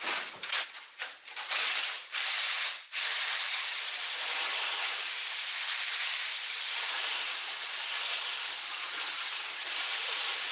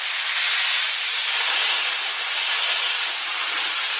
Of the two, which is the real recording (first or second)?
second